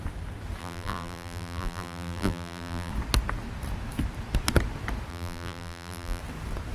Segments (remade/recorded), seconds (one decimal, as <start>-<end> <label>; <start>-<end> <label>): 0.0-0.6 recorded; 0.6-2.9 remade; 2.9-5.1 recorded; 5.1-6.2 remade; 6.2-6.7 recorded